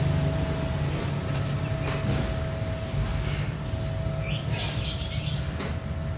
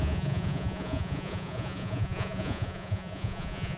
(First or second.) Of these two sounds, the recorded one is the first